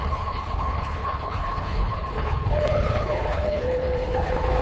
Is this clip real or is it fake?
fake